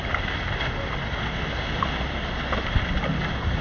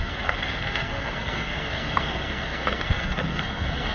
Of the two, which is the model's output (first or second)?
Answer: second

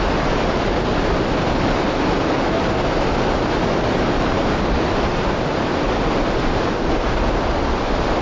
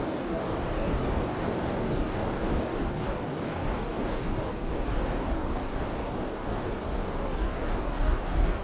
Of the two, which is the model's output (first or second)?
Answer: second